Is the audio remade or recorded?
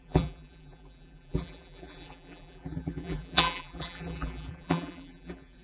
remade